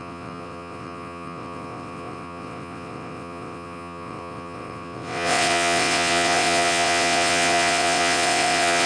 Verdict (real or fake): fake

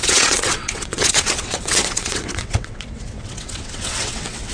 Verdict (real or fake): fake